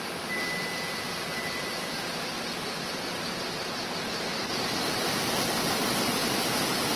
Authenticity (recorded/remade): recorded